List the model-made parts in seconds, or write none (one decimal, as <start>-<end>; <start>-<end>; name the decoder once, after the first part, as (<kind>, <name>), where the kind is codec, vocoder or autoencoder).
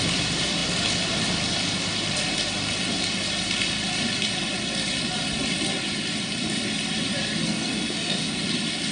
7.4-8.4 (codec, SNAC)